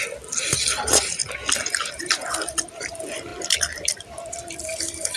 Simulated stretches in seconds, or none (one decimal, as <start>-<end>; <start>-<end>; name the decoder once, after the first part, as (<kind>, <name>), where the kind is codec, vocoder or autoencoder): 0.0-1.2 (vocoder, BigVGAN v2); 1.9-3.3; 4.6-5.2